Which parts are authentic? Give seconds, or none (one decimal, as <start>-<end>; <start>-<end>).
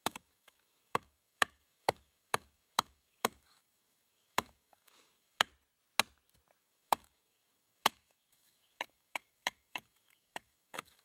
5.5-6.6